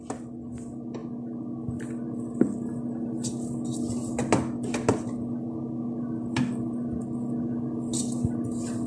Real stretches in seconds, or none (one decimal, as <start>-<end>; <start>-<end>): 0.0-8.9